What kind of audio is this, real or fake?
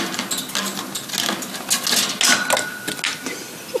real